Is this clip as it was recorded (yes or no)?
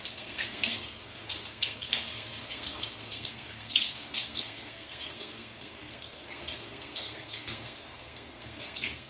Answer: no